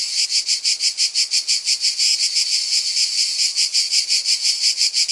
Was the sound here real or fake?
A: real